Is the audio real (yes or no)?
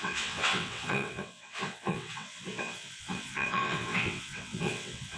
no